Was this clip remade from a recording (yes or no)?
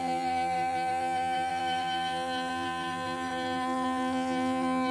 yes